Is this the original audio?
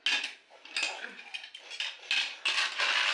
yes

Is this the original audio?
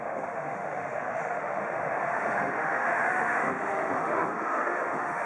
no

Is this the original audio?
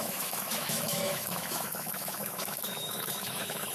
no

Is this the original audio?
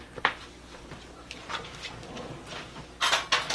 yes